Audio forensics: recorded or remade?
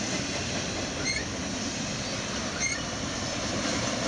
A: recorded